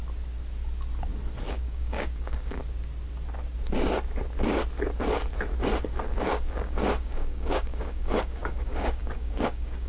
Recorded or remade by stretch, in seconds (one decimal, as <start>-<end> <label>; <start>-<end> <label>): 0.0-1.5 recorded; 1.5-2.6 remade; 2.6-6.3 recorded; 6.3-9.9 remade